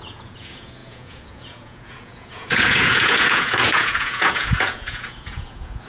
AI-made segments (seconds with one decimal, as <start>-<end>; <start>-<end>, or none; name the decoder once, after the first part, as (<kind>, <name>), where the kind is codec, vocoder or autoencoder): 0.0-5.9 (vocoder, Vocos)